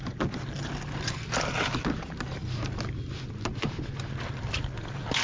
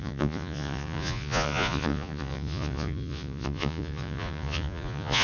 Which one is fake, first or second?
second